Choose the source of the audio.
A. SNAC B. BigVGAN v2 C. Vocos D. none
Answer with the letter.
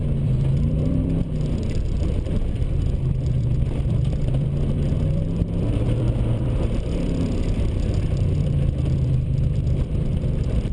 B